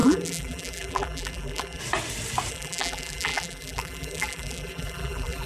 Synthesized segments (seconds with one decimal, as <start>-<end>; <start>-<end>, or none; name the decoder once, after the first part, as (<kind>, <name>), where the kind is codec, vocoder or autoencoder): 0.0-1.8 (vocoder, BigVGAN v2); 2.5-5.5